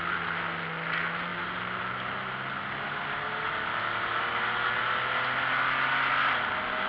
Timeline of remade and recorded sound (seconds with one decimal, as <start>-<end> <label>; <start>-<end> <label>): 0.0-6.9 recorded

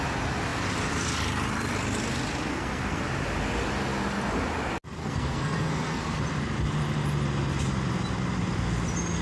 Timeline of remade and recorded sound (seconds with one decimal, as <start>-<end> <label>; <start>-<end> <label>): 0.0-2.5 recorded; 2.5-3.0 remade; 3.0-5.0 recorded; 5.0-6.2 remade; 6.2-9.2 recorded

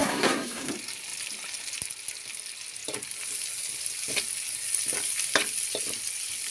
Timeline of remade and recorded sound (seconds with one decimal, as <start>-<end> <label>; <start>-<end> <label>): 0.0-0.7 remade; 0.7-6.5 recorded

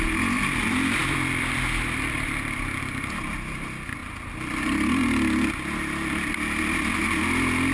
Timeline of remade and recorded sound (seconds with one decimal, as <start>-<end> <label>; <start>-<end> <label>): 0.0-1.0 recorded; 1.0-2.8 remade; 2.8-7.7 recorded

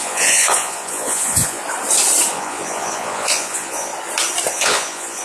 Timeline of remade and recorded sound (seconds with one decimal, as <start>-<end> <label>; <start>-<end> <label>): 0.0-1.6 remade; 1.6-2.3 recorded; 2.3-3.9 remade; 3.9-4.5 recorded; 4.5-5.2 remade

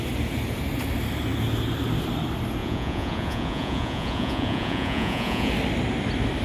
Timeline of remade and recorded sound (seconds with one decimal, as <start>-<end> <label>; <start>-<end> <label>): 0.0-2.6 recorded; 2.6-5.5 remade; 5.5-6.4 recorded

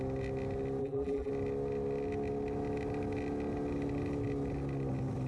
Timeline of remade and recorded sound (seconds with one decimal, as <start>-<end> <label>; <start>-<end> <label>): 0.0-0.8 recorded; 0.8-1.3 remade; 1.3-5.3 recorded